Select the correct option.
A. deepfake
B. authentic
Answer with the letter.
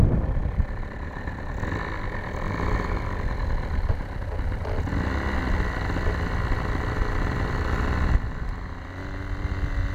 B